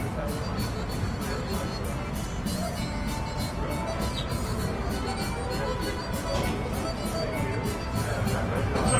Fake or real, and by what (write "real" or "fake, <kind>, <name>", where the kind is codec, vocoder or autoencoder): real